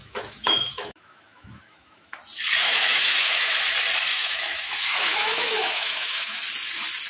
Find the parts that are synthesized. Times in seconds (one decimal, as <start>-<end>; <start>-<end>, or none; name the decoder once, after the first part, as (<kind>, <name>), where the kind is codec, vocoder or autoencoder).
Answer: 0.0-2.2 (autoencoder, DAC-VAE); 2.6-3.6; 4.1-6.4